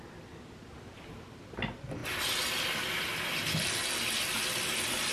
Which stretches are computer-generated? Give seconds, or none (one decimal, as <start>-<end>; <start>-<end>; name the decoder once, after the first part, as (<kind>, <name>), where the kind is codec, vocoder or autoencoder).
none